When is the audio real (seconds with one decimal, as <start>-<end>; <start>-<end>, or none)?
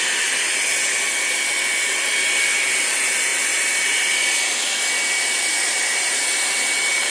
0.0-7.1